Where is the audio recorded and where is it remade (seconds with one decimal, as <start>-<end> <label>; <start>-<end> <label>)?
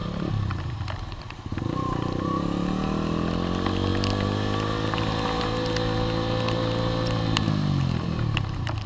0.0-1.2 remade; 1.2-8.9 recorded